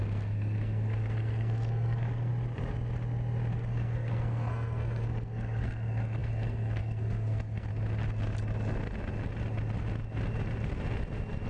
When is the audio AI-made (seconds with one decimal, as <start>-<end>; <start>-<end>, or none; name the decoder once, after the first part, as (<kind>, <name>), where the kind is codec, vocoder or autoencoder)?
0.0-2.3 (codec, SNAC); 3.5-7.7